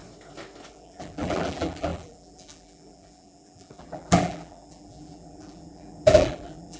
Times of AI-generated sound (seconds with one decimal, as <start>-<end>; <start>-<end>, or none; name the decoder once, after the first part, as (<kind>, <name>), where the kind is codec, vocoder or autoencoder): 0.7-6.8 (vocoder, BigVGAN v2)